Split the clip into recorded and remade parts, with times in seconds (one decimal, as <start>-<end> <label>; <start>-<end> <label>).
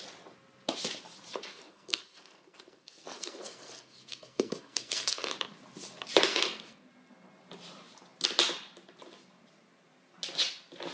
0.0-1.5 recorded; 1.5-5.3 remade; 5.3-6.3 recorded; 6.3-6.9 remade; 6.9-10.9 recorded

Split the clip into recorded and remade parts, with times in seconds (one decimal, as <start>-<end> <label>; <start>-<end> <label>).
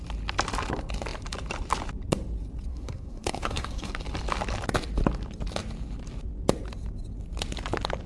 0.0-2.7 recorded; 2.7-3.9 remade; 3.9-8.1 recorded